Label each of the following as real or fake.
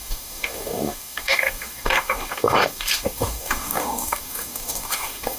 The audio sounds fake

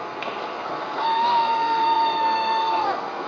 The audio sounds fake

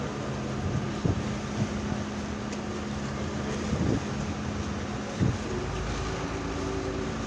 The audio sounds real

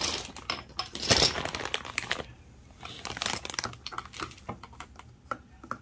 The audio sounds real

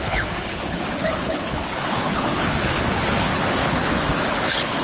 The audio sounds fake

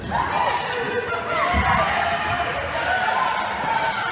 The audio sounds real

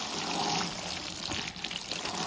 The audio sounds real